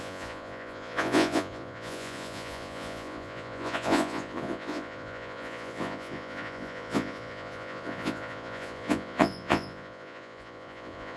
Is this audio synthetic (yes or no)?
yes